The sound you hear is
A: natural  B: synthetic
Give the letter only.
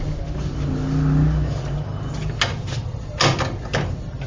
A